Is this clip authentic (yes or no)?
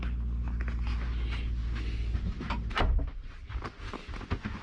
yes